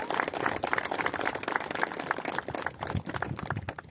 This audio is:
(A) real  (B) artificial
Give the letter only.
A